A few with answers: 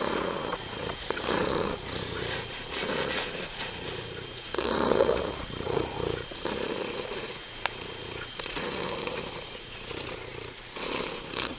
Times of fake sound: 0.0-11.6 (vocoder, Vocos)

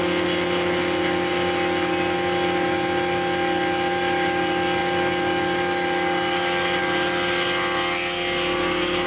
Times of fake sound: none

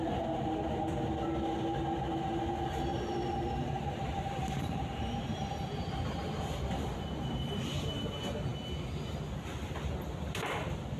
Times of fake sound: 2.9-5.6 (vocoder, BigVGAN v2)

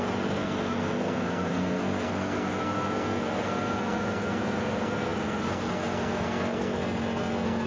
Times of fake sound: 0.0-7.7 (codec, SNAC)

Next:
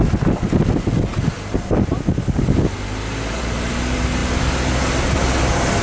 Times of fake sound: none

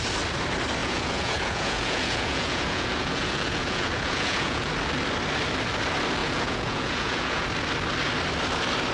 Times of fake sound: 0.8-4.7 (vocoder, Vocos); 6.2-7.5